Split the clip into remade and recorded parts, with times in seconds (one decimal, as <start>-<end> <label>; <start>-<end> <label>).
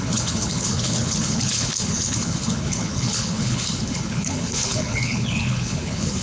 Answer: 0.0-6.2 remade